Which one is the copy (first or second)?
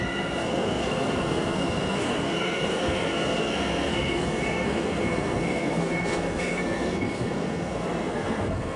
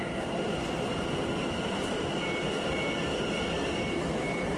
first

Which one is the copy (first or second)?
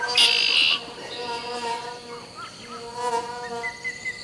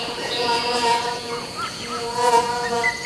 second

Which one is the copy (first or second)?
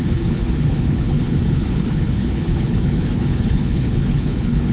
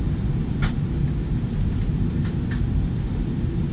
first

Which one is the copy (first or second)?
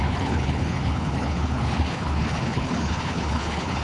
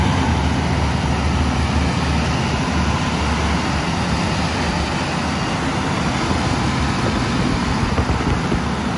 first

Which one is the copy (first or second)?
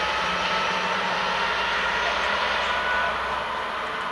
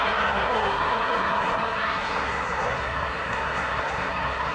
second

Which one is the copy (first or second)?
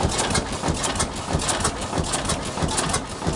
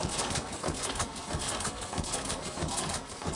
second